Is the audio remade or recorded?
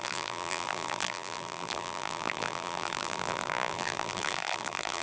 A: remade